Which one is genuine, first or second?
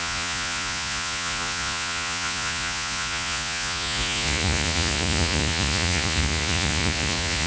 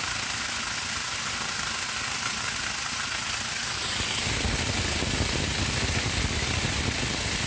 second